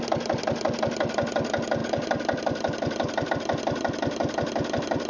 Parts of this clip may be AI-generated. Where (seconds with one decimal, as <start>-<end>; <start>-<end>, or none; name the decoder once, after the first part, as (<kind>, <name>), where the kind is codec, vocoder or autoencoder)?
none